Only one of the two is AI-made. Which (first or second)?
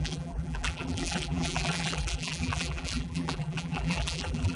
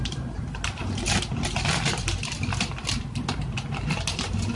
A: first